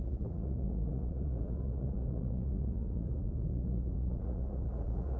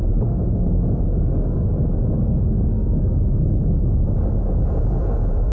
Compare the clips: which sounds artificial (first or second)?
first